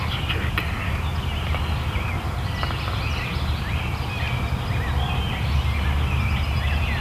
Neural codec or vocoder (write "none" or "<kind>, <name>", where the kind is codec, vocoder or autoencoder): none